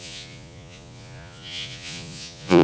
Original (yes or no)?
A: no